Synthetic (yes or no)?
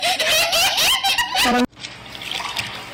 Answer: no